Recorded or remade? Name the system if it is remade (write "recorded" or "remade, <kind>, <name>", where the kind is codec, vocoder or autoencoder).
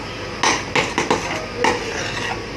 recorded